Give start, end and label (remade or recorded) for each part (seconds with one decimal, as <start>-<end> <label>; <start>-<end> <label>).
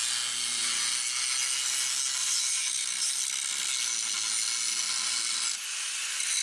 0.0-2.2 recorded; 2.2-3.1 remade; 3.1-6.4 recorded